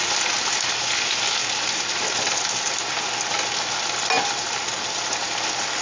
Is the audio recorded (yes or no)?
yes